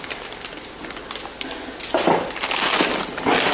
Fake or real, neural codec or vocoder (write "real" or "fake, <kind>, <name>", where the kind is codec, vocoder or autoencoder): real